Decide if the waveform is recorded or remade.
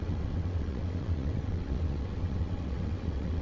remade